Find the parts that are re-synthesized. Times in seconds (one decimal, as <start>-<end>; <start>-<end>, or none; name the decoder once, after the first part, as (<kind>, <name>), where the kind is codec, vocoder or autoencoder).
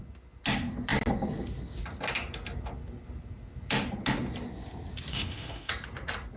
5.1-5.7 (autoencoder, DAC-VAE)